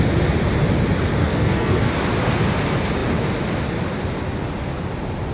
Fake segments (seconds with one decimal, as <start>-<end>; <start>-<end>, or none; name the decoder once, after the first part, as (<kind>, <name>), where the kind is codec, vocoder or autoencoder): 1.2-1.9 (codec, SNAC)